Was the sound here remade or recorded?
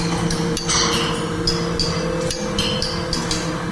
recorded